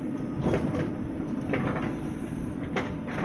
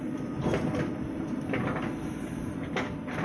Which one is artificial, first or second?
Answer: first